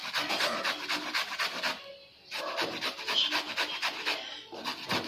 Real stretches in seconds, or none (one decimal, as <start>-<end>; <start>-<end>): 0.0-5.1

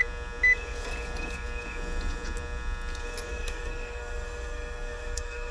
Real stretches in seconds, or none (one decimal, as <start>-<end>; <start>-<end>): 0.0-3.3

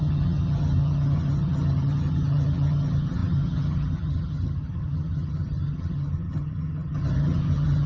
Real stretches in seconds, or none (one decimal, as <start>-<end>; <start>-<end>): none